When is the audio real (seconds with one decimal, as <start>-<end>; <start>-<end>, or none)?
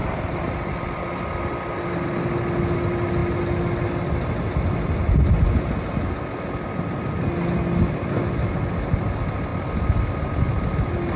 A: 1.0-9.5; 10.3-11.2